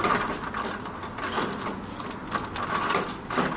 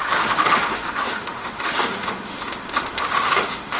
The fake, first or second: second